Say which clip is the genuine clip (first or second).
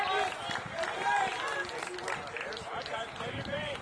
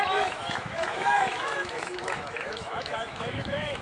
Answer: first